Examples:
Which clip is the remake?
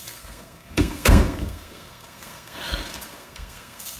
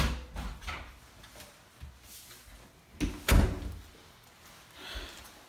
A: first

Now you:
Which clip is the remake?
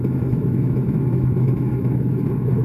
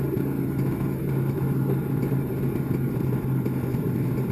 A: first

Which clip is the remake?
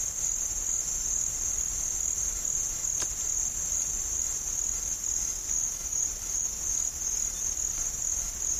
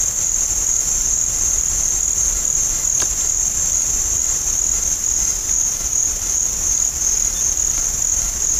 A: second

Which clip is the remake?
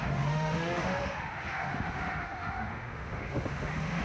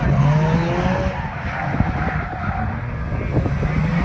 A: first